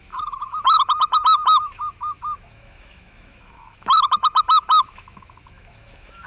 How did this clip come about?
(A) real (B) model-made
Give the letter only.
B